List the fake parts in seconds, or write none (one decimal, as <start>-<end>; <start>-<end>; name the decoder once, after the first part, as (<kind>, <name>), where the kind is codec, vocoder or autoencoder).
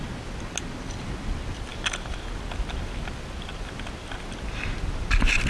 none